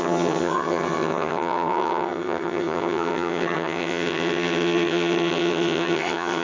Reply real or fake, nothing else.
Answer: fake